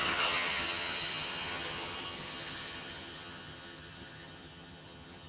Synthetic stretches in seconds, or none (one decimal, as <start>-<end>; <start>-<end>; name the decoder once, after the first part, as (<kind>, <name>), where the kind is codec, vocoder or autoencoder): 0.0-5.3 (vocoder, HiFi-GAN)